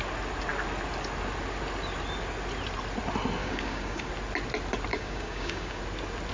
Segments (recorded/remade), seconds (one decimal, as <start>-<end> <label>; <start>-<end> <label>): 0.0-3.4 recorded; 3.4-4.1 remade; 4.1-4.9 recorded; 4.9-5.8 remade; 5.8-6.3 recorded